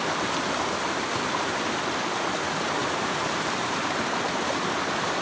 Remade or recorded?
recorded